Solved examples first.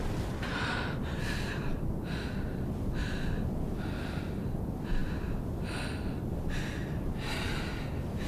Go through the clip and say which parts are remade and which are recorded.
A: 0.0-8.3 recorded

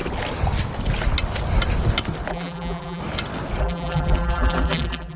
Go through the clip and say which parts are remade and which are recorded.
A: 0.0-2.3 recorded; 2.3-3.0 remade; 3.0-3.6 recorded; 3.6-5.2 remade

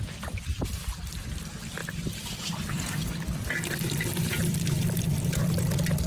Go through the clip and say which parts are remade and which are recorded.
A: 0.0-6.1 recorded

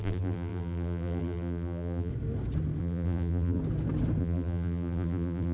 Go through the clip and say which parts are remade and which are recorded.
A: 0.0-2.1 remade; 2.1-2.8 recorded; 2.8-3.6 remade; 3.6-4.2 recorded; 4.2-5.5 remade

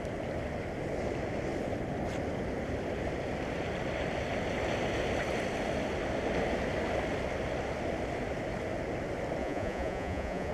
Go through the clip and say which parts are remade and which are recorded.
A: 0.0-9.4 recorded; 9.4-10.5 remade

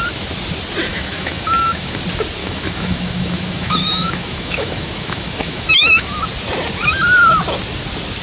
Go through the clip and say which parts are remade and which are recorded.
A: 0.0-0.9 recorded; 0.9-2.0 remade; 2.0-2.4 recorded; 2.4-6.2 remade; 6.2-8.2 recorded

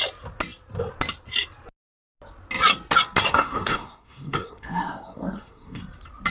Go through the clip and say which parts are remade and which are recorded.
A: 0.0-3.3 recorded; 3.3-5.8 remade; 5.8-6.3 recorded

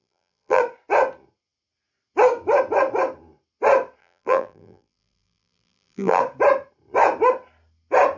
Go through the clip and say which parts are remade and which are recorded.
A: 0.0-0.6 remade; 0.6-4.0 recorded; 4.0-6.2 remade; 6.2-8.2 recorded